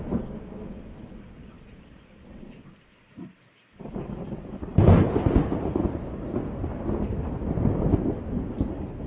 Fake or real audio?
real